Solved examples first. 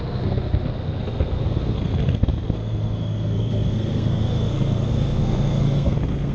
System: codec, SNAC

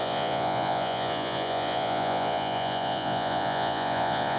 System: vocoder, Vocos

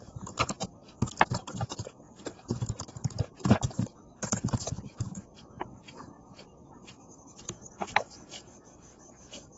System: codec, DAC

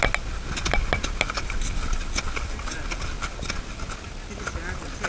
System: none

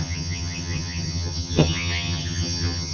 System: vocoder, HiFi-GAN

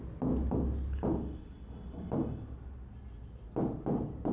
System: none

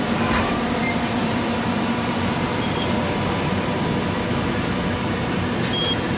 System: vocoder, BigVGAN v2